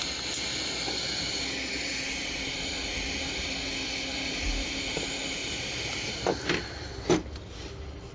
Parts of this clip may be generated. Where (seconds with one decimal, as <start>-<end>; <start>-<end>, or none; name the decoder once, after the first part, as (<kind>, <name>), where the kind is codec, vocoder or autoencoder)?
4.1-4.9 (vocoder, BigVGAN v2); 5.4-6.9